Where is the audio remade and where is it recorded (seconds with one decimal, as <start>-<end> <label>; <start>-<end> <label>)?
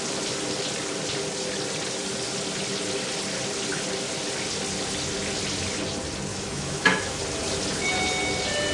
0.0-6.3 recorded; 6.3-7.2 remade; 7.2-8.7 recorded